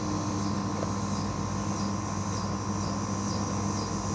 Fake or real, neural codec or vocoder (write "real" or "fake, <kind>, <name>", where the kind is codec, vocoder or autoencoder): real